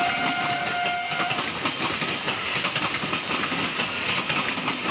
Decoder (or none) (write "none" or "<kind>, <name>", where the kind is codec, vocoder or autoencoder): none